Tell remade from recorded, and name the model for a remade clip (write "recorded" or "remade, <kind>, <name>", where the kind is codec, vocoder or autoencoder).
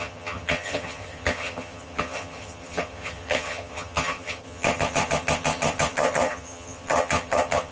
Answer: remade, vocoder, HiFi-GAN